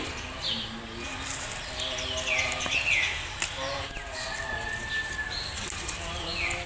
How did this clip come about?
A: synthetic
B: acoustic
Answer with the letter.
B